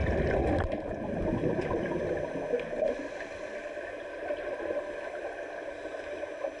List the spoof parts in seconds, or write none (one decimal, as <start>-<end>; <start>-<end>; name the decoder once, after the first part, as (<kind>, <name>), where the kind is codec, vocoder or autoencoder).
none